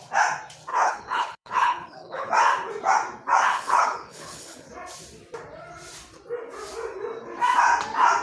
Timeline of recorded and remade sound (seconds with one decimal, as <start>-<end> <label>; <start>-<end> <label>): 0.0-0.7 recorded; 0.7-2.3 remade; 2.3-3.5 recorded; 3.5-4.7 remade; 4.7-8.2 recorded